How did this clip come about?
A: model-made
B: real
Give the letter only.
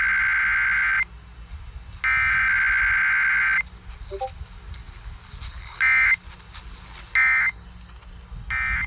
B